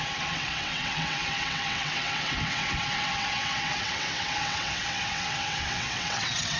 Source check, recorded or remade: remade